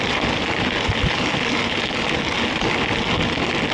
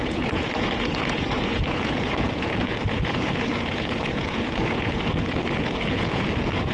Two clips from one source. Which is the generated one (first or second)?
second